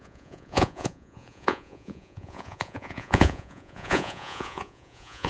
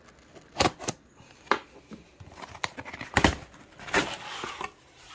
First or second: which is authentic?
second